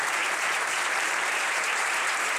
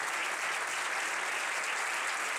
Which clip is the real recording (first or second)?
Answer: second